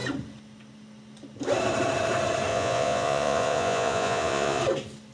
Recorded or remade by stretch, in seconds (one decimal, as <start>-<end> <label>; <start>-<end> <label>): 0.0-2.5 recorded; 2.5-4.6 remade; 4.6-5.1 recorded